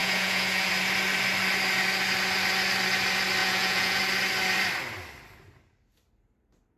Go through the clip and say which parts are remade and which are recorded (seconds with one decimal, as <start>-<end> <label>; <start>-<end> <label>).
0.0-0.7 remade; 0.7-3.4 recorded; 3.4-4.0 remade; 4.0-6.8 recorded